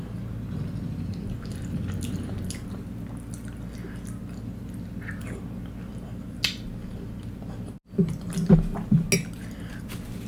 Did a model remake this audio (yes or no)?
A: no